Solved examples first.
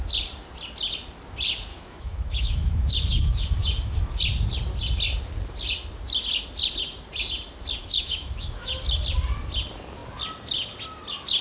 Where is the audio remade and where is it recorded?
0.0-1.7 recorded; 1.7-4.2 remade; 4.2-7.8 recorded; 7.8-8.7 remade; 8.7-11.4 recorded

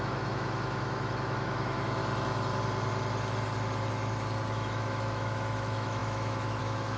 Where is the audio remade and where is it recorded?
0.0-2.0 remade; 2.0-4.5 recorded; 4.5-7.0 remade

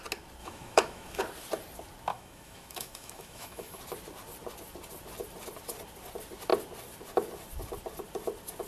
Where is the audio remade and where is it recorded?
0.0-0.4 recorded; 0.4-1.2 remade; 1.2-2.1 recorded; 2.1-3.8 remade; 3.8-8.7 recorded

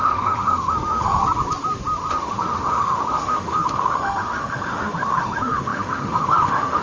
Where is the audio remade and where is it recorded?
0.0-1.2 remade; 1.2-2.1 recorded; 2.1-6.8 remade

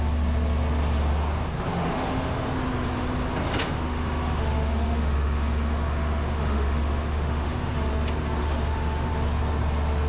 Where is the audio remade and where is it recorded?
0.0-1.8 recorded; 1.8-2.5 remade; 2.5-3.6 recorded; 3.6-7.9 remade; 7.9-8.4 recorded; 8.4-9.1 remade; 9.1-10.1 recorded